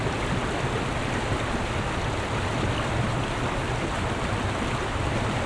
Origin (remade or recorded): recorded